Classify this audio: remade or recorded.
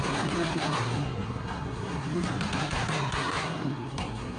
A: remade